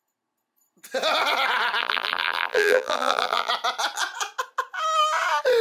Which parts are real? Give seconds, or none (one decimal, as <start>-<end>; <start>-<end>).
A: 0.0-1.8; 3.5-5.6